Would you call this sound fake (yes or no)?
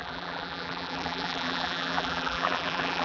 yes